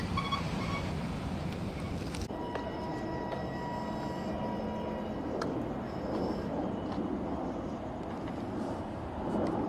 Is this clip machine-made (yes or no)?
no